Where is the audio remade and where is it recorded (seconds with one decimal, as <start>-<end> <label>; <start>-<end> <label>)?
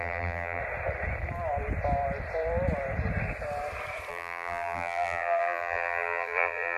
0.0-0.6 remade; 0.6-4.1 recorded; 4.1-6.8 remade